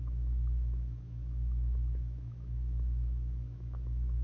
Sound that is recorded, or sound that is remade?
remade